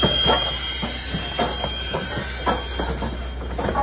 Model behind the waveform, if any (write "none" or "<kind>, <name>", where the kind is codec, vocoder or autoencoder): none